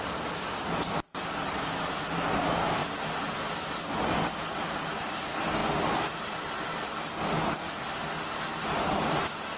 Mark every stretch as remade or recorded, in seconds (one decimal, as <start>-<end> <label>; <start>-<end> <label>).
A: 0.0-9.6 recorded

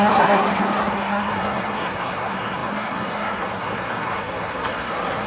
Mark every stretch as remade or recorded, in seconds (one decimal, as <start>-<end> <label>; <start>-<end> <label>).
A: 0.0-5.3 remade

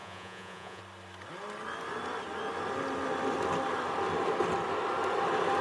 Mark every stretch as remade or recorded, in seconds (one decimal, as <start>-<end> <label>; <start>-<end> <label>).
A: 0.0-0.8 remade; 0.8-5.6 recorded

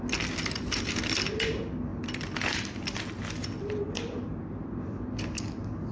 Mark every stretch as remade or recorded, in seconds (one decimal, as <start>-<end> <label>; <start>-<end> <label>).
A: 0.0-5.9 recorded